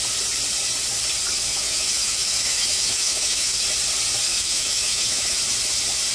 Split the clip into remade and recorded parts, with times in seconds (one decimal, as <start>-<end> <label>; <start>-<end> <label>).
0.0-1.5 recorded; 1.5-3.6 remade; 3.6-4.3 recorded; 4.3-5.4 remade; 5.4-6.1 recorded